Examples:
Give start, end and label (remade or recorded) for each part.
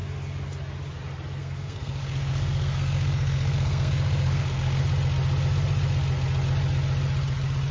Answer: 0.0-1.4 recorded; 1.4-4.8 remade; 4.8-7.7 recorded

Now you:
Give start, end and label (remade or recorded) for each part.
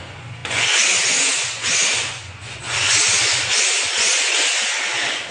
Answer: 0.0-5.3 remade